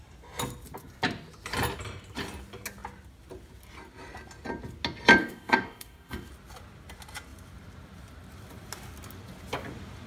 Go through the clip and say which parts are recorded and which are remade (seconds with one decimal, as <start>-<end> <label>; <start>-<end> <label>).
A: 0.0-5.2 recorded; 5.2-6.3 remade; 6.3-10.1 recorded